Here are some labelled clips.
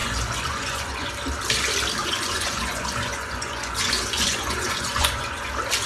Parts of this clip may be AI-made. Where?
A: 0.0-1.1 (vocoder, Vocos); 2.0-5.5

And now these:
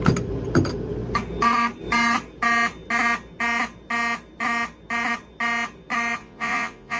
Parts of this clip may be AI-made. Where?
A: 6.2-7.0 (vocoder, Vocos)

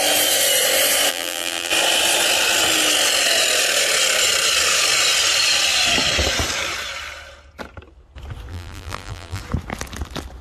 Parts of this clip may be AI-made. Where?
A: 1.1-1.7 (vocoder, BigVGAN v2); 8.5-9.4

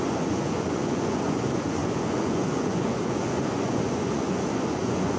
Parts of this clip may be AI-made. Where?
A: 0.0-5.2 (vocoder, Vocos)

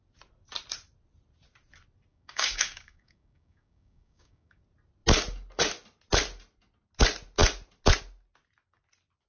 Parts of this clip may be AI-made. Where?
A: 2.1-4.6 (codec, DAC)

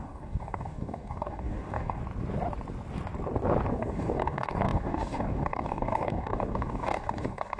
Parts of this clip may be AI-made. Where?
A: 0.0-2.0 (codec, DAC); 3.7-7.6

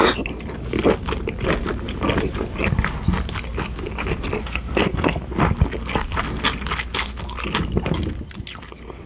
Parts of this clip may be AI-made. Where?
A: 4.4-5.2 (codec, SNAC)